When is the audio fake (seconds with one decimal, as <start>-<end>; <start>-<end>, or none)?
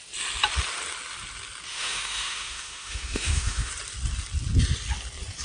1.7-3.7